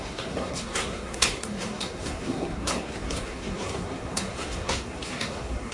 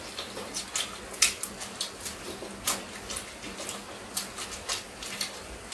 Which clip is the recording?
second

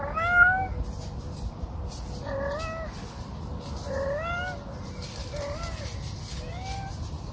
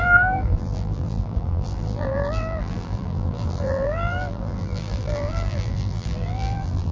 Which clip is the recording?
first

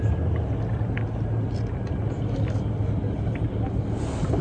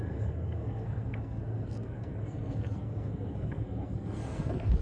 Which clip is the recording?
first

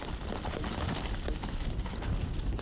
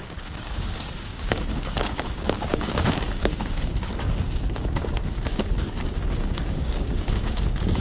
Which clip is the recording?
first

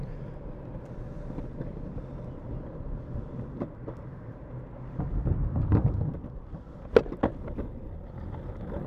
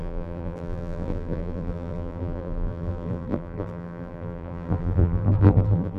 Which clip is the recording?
first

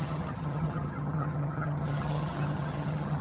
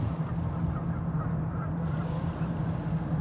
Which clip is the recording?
second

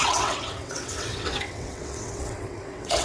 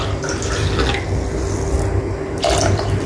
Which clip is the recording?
second